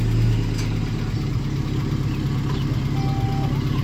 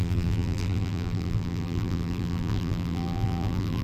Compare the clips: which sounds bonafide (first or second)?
first